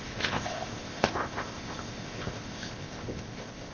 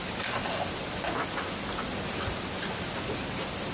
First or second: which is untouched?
second